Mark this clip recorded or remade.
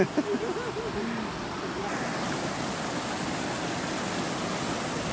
recorded